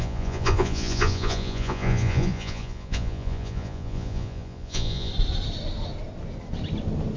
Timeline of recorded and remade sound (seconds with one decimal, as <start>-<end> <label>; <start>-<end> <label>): 0.0-5.1 remade; 5.1-7.2 recorded